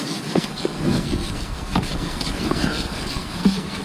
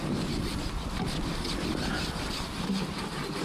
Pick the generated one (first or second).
first